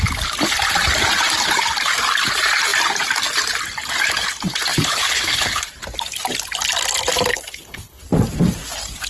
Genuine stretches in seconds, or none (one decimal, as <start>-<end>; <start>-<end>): 0.0-4.7; 5.7-7.3; 8.0-9.1